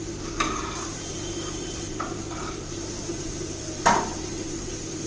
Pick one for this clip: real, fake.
fake